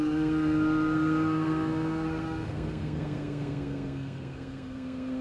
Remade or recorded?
remade